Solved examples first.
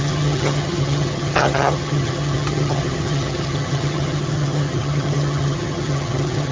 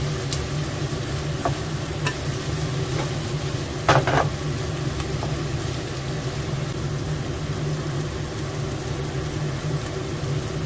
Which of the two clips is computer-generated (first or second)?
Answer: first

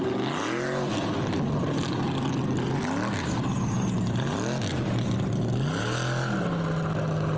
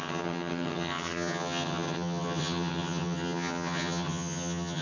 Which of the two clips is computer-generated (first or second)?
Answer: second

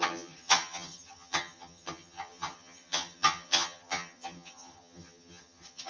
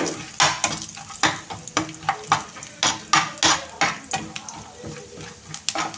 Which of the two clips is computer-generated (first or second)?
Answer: first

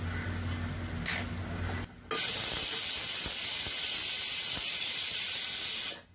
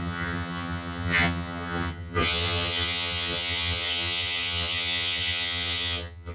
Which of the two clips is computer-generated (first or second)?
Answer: second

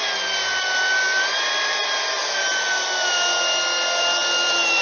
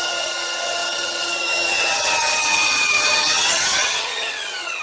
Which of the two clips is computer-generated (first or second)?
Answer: second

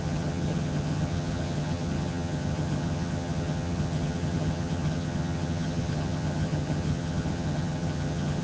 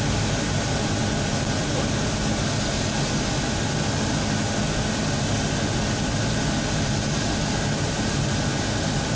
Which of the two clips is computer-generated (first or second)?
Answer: first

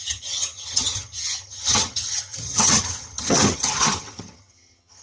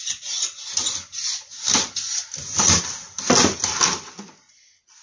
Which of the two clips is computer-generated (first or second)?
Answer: first